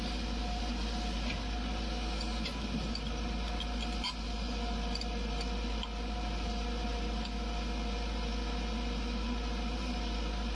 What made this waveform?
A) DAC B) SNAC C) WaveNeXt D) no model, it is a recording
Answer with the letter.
D